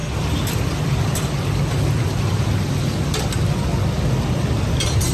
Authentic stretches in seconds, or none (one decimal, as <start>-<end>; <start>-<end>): 0.0-5.1